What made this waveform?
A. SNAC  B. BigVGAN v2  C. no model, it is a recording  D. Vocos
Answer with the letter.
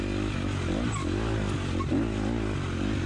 C